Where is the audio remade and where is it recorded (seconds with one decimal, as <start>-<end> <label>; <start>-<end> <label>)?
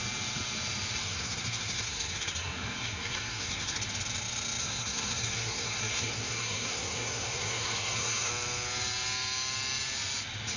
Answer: 0.0-1.0 recorded; 1.0-3.8 remade; 3.8-4.6 recorded; 4.6-8.3 remade; 8.3-10.6 recorded